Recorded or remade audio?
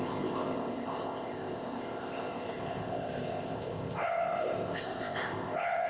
remade